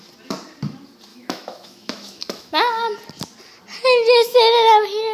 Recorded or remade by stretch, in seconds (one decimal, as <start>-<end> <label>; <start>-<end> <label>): 0.0-1.1 recorded; 1.1-2.7 remade; 2.7-5.1 recorded